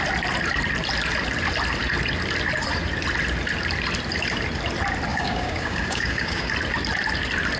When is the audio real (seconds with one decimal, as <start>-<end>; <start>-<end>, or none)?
0.0-5.1; 6.5-7.6